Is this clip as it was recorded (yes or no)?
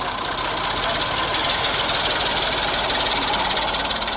yes